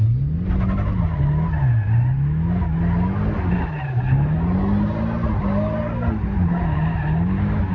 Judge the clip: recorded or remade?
recorded